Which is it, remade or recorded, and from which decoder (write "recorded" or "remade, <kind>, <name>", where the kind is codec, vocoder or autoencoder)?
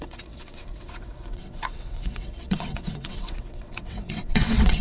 remade, vocoder, WaveNeXt